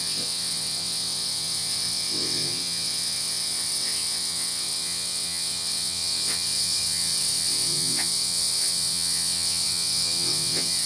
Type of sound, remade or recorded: remade